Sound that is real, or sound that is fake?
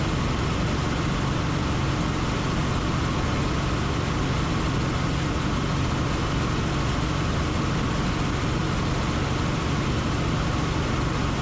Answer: real